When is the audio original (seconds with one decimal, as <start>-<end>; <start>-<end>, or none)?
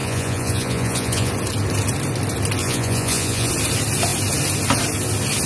1.3-2.6; 3.5-5.5